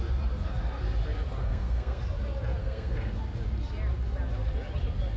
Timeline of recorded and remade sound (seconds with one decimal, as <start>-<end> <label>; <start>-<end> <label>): 0.0-1.4 recorded; 1.4-2.0 remade; 2.0-2.6 recorded; 2.6-3.2 remade; 3.2-5.2 recorded